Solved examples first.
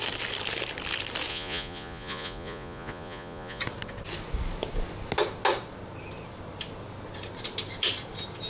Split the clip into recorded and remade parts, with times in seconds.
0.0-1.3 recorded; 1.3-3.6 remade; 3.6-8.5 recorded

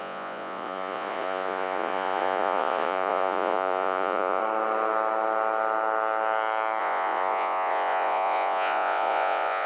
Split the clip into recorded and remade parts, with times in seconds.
0.0-4.4 remade; 4.4-6.8 recorded; 6.8-9.7 remade

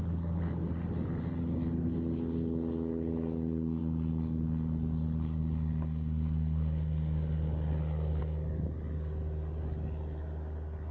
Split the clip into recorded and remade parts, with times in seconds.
0.0-10.9 recorded

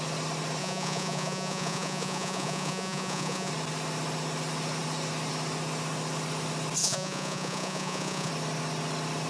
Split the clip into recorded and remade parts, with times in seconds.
0.0-0.6 recorded; 0.6-3.5 remade; 3.5-6.8 recorded; 6.8-8.3 remade; 8.3-9.3 recorded

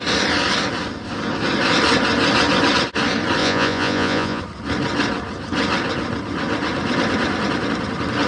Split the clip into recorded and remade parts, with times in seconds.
0.0-3.4 recorded; 3.4-4.4 remade; 4.4-8.3 recorded

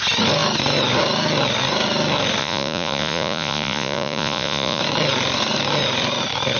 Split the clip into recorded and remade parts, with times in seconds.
0.0-2.4 recorded; 2.4-4.8 remade; 4.8-6.6 recorded

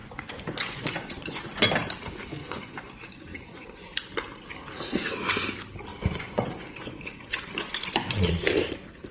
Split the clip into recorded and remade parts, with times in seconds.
0.0-1.6 remade; 1.6-2.4 recorded; 2.4-2.9 remade; 2.9-3.3 recorded; 3.3-3.9 remade; 3.9-5.9 recorded; 5.9-8.3 remade; 8.3-9.1 recorded

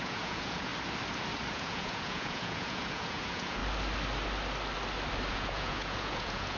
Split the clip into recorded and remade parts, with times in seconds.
0.0-0.7 remade; 0.7-1.5 recorded; 1.5-3.6 remade; 3.6-5.3 recorded; 5.3-6.6 remade